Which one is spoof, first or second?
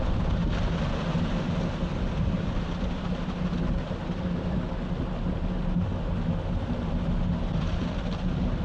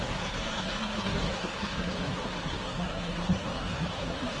second